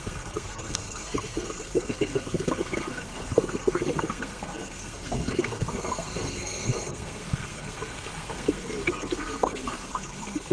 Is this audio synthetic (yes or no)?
yes